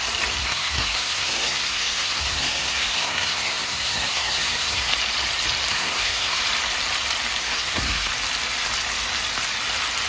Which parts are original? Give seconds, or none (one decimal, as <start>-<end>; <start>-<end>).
0.0-0.4; 4.9-5.7; 6.4-7.4; 8.1-10.1